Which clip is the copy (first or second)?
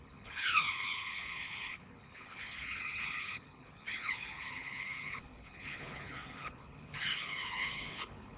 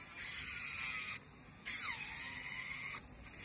first